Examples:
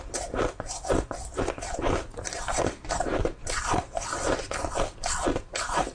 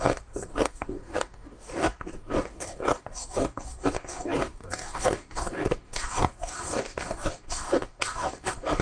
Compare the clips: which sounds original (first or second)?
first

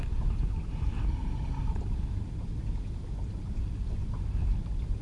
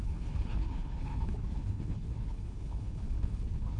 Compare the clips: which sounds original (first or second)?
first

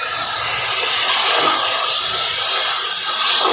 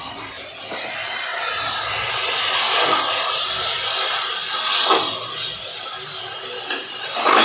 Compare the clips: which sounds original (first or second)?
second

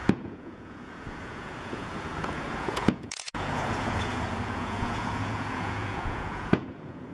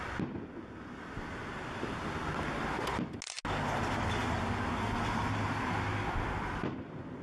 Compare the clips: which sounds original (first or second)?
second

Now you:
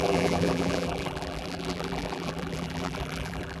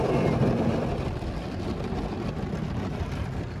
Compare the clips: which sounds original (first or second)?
second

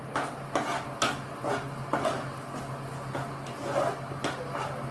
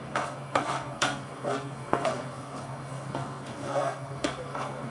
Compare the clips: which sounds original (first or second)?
first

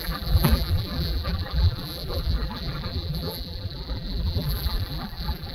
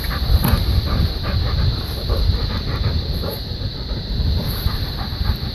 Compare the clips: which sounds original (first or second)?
second